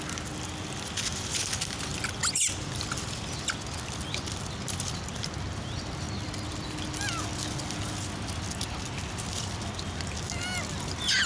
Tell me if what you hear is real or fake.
real